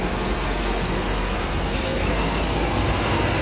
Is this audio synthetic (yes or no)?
yes